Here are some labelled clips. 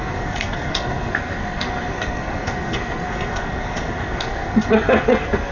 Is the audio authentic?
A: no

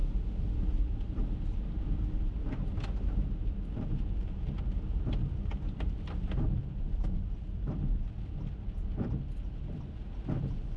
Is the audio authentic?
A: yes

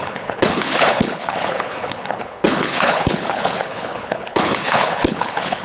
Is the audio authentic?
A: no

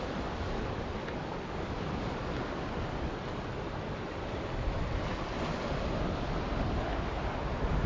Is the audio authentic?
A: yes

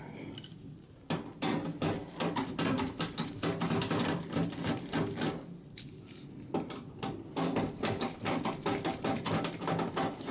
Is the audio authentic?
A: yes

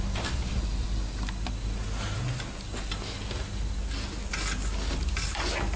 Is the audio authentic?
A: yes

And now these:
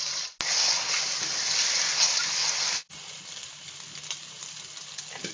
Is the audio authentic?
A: yes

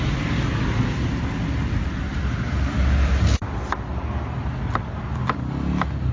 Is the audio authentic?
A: yes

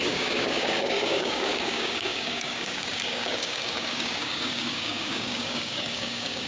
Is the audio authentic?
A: no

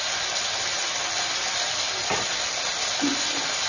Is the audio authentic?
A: yes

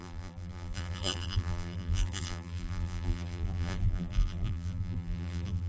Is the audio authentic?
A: no